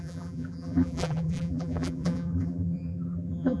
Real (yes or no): no